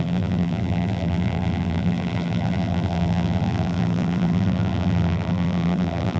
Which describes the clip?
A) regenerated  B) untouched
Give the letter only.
A